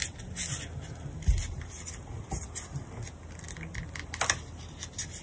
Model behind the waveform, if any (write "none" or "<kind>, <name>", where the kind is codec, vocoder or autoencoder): none